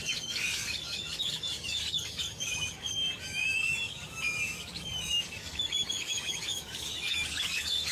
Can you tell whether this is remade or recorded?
remade